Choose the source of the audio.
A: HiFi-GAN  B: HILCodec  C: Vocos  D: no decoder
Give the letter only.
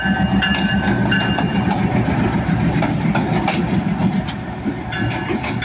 D